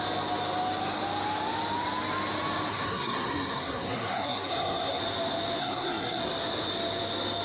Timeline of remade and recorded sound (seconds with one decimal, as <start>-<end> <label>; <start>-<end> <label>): 0.0-2.7 recorded; 2.7-5.0 remade; 5.0-5.6 recorded; 5.6-6.2 remade; 6.2-7.4 recorded